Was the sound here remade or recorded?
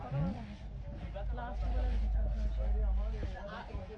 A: recorded